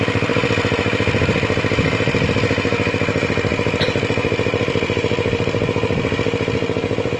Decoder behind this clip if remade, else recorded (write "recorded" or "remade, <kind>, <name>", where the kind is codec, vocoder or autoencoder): remade, vocoder, BigVGAN v2